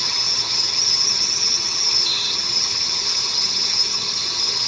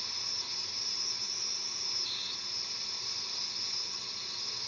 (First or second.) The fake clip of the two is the first